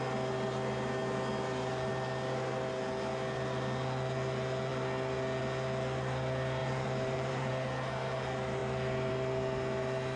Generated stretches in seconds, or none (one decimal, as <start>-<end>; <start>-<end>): 6.6-7.5